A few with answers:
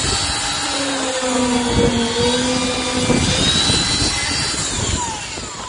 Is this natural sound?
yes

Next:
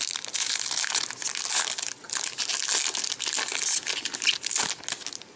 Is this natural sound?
yes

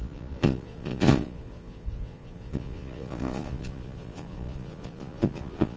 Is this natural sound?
no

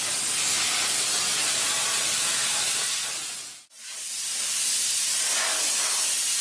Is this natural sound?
yes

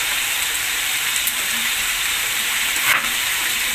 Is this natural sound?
no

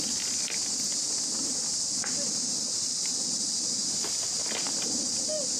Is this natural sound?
yes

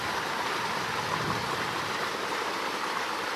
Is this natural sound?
yes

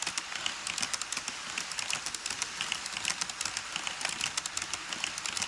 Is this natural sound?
yes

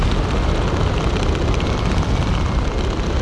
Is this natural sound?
yes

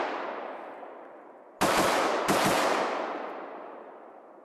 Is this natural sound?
yes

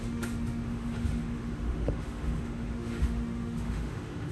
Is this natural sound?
no